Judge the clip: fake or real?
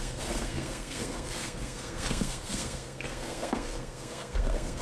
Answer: fake